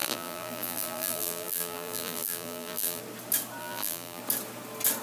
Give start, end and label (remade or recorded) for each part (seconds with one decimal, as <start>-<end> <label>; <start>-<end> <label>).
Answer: 0.0-3.0 remade; 3.0-3.6 recorded; 3.6-4.2 remade; 4.2-5.0 recorded